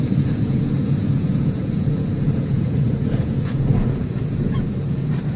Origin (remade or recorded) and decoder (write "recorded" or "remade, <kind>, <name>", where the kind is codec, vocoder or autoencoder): remade, vocoder, Vocos